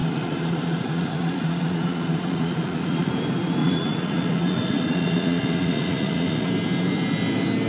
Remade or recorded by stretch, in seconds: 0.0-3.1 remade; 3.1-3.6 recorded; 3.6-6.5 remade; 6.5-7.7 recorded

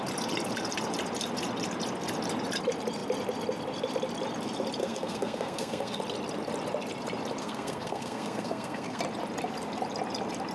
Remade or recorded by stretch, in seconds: 0.0-4.8 recorded; 4.8-6.0 remade; 6.0-7.4 recorded; 7.4-9.0 remade; 9.0-10.5 recorded

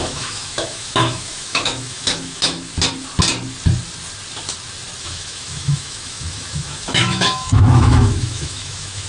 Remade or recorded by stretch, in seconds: 0.0-2.7 remade; 2.7-5.0 recorded; 5.0-9.1 remade

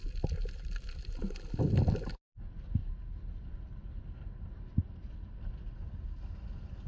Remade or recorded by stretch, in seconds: 0.0-6.9 recorded

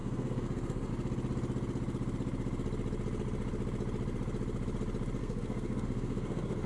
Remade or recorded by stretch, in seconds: 0.0-0.9 remade; 0.9-5.2 recorded; 5.2-6.7 remade

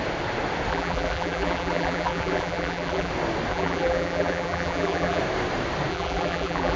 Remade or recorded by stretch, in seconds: 0.0-0.7 recorded; 0.7-3.1 remade; 3.1-3.5 recorded; 3.5-5.2 remade; 5.2-5.9 recorded; 5.9-6.8 remade

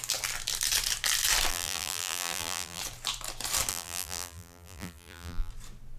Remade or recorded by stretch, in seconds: 0.0-1.5 recorded; 1.5-2.8 remade; 2.8-3.7 recorded; 3.7-5.5 remade; 5.5-6.0 recorded